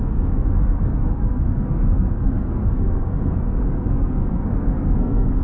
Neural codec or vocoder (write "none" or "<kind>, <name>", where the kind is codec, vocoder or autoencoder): codec, SNAC